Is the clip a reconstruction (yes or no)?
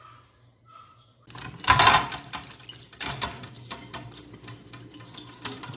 no